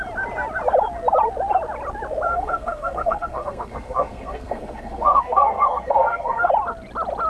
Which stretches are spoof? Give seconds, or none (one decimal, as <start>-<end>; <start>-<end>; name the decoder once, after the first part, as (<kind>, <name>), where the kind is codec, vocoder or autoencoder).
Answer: 2.3-6.5 (codec, SNAC)